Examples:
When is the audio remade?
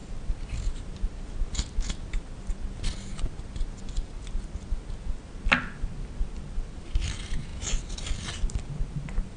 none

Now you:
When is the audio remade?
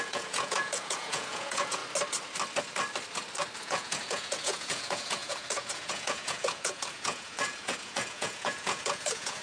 0.0-1.8 (vocoder, Vocos); 3.6-9.4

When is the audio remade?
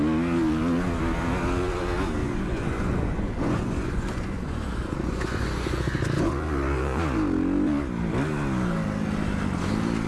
2.2-7.0 (vocoder, Vocos)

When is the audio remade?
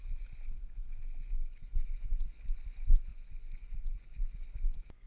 0.6-2.4 (vocoder, Vocos); 3.1-4.3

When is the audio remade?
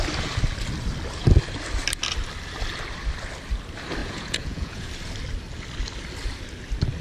4.0-4.9 (vocoder, Vocos)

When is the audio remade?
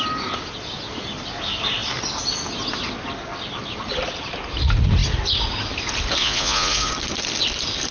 6.2-6.9 (vocoder, Vocos)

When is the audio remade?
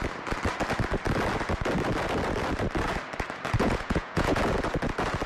3.6-4.4 (vocoder, Vocos)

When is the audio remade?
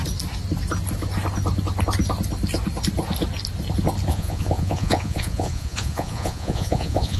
4.1-7.2 (vocoder, Vocos)